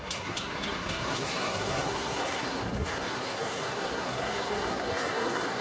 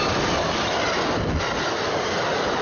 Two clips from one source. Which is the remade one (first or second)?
first